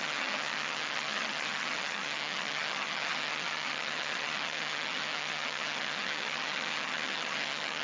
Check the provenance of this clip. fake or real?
fake